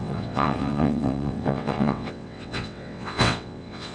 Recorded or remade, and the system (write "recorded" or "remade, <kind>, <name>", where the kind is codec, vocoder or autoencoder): remade, vocoder, WaveNeXt